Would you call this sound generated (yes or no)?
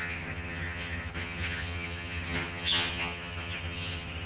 yes